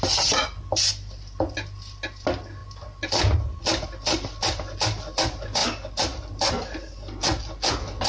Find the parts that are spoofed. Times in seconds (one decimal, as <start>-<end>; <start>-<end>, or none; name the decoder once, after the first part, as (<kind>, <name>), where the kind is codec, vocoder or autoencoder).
none